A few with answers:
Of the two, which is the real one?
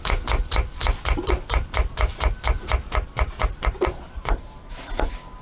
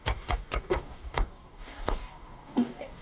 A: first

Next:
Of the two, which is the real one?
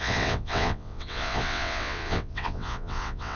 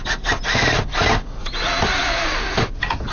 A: second